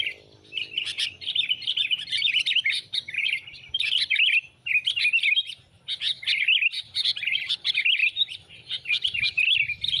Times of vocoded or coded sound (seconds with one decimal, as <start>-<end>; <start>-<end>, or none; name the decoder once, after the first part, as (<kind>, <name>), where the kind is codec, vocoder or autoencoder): 0.0-4.7 (vocoder, BigVGAN v2); 7.0-10.0